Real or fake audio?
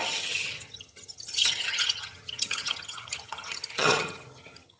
fake